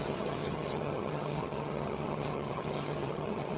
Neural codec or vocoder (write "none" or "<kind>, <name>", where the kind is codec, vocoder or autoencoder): vocoder, HiFi-GAN